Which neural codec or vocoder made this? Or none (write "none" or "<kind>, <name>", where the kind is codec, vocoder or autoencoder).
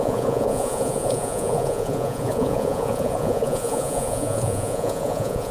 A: vocoder, Vocos